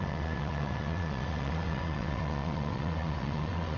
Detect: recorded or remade remade